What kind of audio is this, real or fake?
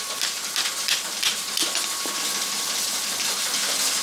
real